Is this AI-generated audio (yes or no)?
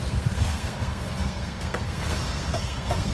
yes